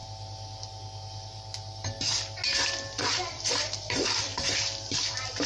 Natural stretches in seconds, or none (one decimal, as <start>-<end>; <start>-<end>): 0.0-3.0; 4.3-4.9

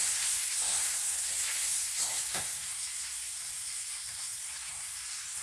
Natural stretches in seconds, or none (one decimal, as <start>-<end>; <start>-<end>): none

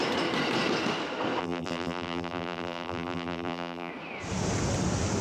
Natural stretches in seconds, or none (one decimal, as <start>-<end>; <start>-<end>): 0.0-1.4; 3.9-5.2